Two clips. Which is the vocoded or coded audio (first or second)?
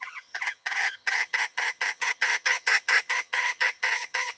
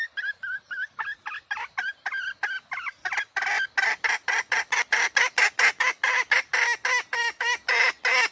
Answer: first